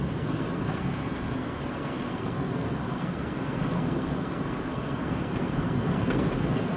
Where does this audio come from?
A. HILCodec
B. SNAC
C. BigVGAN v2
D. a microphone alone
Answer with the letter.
B